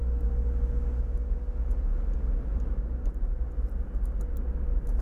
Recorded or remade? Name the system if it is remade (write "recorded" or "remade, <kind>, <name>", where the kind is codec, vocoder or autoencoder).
recorded